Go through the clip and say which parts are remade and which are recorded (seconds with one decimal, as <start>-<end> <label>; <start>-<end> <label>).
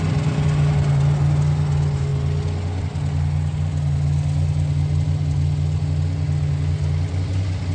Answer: 0.0-7.7 recorded